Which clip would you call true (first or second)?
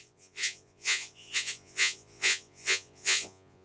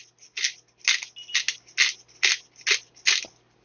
second